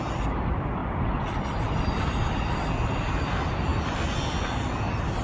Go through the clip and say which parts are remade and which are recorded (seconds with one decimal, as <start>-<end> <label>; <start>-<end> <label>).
0.0-5.2 recorded